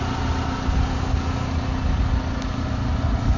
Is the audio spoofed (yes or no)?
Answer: no